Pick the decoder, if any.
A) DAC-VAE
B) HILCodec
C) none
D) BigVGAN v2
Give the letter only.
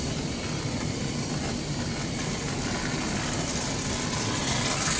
D